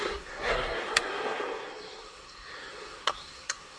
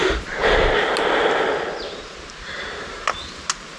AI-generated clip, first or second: first